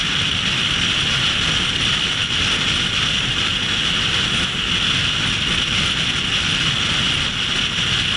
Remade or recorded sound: recorded